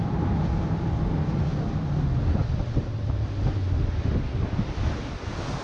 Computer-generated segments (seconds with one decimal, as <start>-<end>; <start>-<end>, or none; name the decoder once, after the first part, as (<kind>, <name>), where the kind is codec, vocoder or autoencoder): none